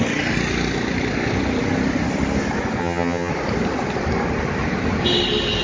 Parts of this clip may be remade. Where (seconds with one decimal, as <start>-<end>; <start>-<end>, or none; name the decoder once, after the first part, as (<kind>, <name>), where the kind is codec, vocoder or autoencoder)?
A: 2.8-3.3 (vocoder, HiFi-GAN)